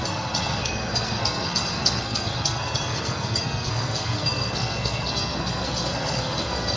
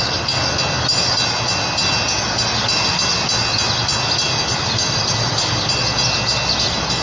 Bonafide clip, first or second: second